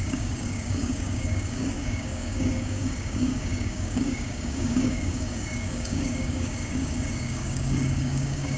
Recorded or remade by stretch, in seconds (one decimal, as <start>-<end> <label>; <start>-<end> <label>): 0.0-8.6 remade